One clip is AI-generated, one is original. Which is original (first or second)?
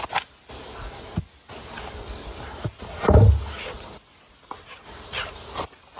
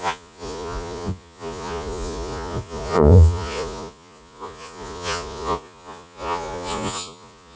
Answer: first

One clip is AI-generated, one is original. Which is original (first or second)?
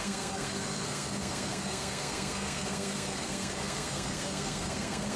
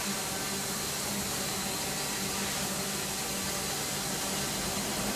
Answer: second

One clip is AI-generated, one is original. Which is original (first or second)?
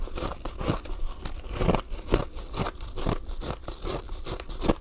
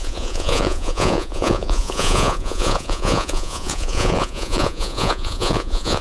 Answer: first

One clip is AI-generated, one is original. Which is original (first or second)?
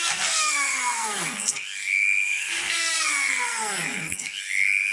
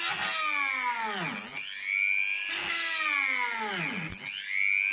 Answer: second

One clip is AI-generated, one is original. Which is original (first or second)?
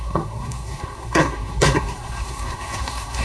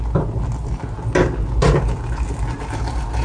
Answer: second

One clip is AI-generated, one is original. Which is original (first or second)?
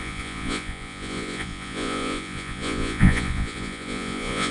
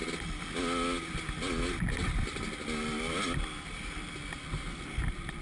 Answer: second